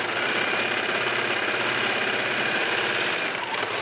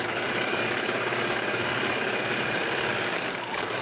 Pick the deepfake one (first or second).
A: second